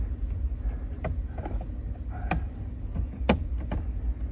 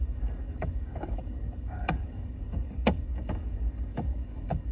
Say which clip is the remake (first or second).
second